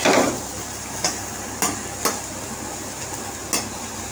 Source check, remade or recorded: recorded